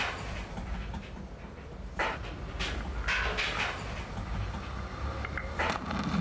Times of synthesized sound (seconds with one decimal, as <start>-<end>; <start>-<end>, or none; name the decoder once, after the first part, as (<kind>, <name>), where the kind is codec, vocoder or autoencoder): none